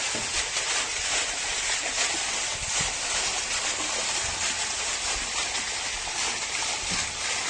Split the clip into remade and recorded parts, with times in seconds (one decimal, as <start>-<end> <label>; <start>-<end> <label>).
0.0-7.5 recorded